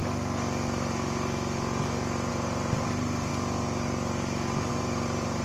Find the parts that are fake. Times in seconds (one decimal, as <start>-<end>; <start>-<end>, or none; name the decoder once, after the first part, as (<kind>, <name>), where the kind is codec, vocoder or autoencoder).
2.3-3.3 (vocoder, BigVGAN v2); 4.7-5.4